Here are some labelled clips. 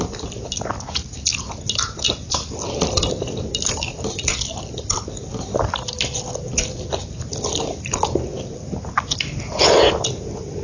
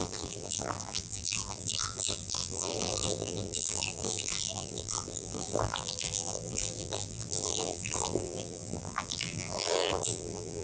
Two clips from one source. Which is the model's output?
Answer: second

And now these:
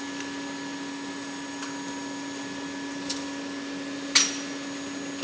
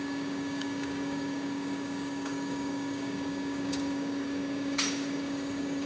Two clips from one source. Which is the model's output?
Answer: second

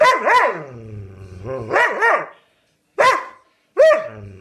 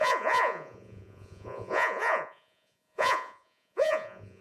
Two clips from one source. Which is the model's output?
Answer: second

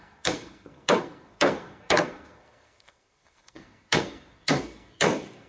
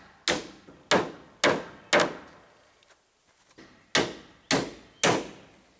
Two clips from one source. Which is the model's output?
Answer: first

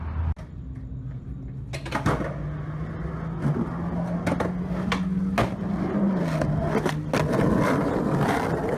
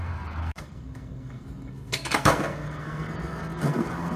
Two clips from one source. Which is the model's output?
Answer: second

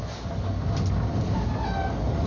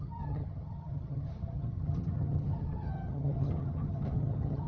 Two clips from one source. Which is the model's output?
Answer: second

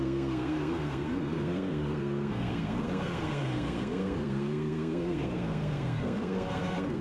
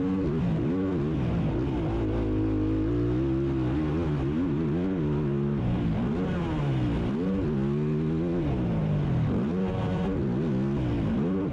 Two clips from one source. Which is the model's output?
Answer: first